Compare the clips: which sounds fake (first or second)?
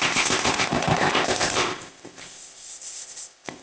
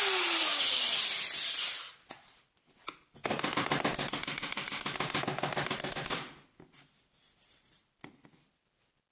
first